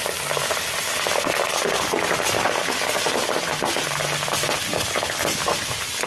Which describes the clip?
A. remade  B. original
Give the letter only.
B